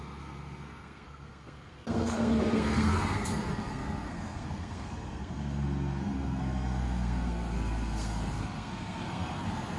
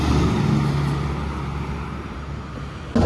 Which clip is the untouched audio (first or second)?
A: second